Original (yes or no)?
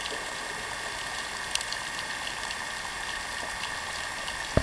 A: yes